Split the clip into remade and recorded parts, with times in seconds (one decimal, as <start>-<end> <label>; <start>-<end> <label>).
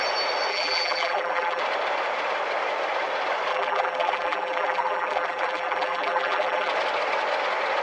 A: 0.0-0.5 recorded; 0.5-1.6 remade; 1.6-3.5 recorded; 3.5-6.7 remade; 6.7-7.8 recorded